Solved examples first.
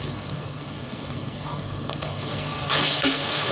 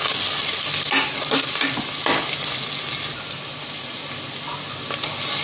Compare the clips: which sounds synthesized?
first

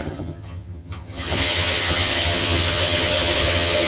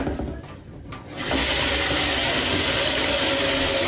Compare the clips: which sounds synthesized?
first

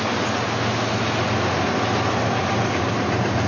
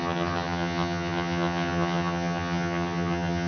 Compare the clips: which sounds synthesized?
second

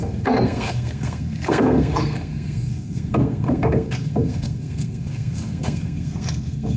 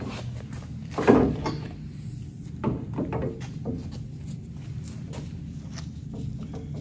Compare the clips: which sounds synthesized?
first